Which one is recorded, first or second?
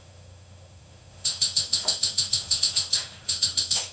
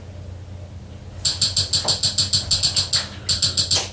second